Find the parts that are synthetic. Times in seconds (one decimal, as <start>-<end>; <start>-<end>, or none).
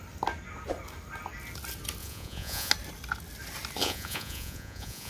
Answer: 2.0-2.7; 3.8-5.1